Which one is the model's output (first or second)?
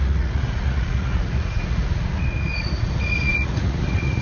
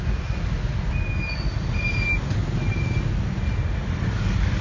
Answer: first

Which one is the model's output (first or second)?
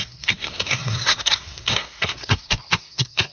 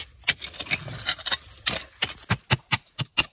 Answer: first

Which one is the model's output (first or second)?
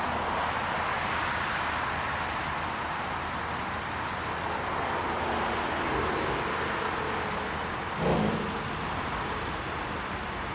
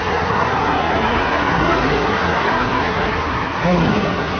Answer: second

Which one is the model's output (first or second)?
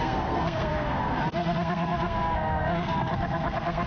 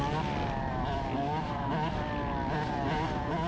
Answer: first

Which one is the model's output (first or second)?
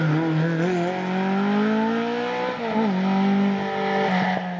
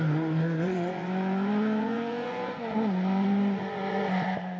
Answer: second